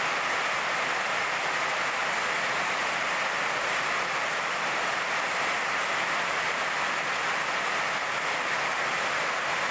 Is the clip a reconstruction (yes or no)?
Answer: no